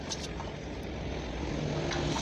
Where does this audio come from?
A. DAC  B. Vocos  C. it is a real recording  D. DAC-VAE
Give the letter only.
C